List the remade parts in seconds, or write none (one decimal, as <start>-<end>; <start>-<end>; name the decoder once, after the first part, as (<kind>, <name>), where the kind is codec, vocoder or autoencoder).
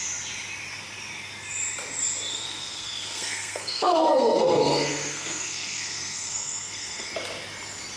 2.3-7.1 (codec, SNAC)